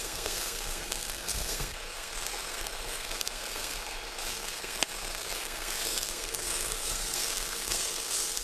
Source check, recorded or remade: remade